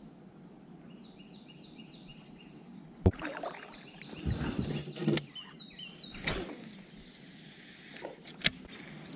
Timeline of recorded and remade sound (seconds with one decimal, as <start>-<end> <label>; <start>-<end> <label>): 0.0-9.2 recorded